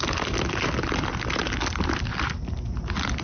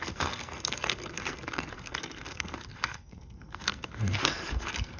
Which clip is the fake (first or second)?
second